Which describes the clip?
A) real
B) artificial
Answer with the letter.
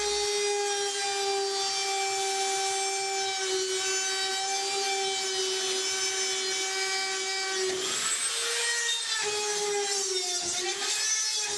A